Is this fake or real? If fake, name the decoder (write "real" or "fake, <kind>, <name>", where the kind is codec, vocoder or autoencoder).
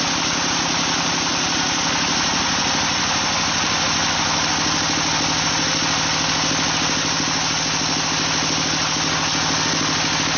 real